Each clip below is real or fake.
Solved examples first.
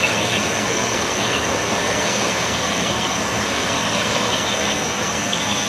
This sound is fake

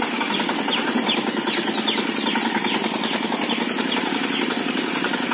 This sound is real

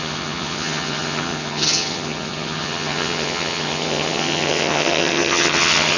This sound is fake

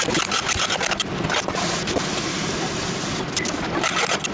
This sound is real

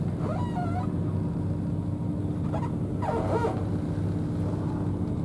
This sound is real